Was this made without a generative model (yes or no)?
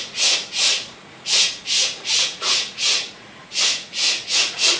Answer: no